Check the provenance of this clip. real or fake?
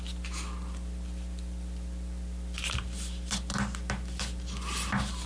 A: real